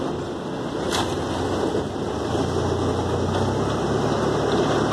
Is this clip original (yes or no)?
yes